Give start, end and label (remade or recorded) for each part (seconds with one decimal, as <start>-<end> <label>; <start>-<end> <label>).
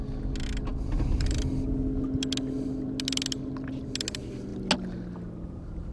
0.0-5.9 recorded